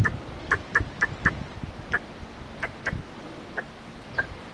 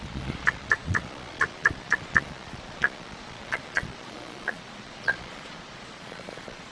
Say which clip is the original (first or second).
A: first